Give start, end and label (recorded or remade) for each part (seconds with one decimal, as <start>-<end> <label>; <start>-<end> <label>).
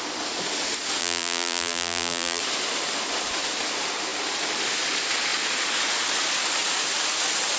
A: 0.0-1.0 recorded; 1.0-2.4 remade; 2.4-7.6 recorded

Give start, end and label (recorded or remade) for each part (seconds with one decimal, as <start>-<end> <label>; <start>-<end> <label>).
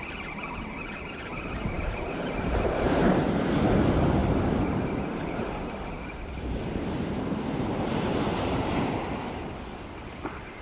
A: 0.0-1.3 recorded; 1.3-3.5 remade; 3.5-4.2 recorded; 4.2-9.1 remade; 9.1-10.6 recorded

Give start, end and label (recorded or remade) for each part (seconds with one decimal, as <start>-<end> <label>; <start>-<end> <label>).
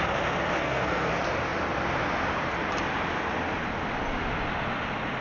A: 0.0-0.6 recorded; 0.6-1.1 remade; 1.1-5.2 recorded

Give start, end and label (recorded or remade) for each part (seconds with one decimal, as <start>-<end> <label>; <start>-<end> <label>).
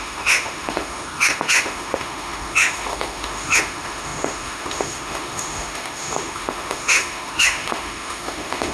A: 0.0-8.7 remade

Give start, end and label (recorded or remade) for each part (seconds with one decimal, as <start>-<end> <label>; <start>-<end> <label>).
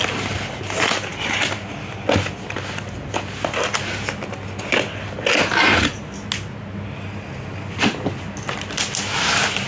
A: 0.0-9.7 recorded